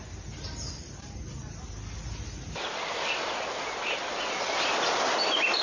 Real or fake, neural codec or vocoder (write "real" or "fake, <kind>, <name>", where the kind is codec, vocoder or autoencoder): real